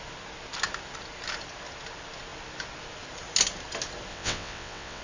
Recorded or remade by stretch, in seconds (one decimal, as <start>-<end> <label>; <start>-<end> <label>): 0.0-4.1 recorded; 4.1-5.0 remade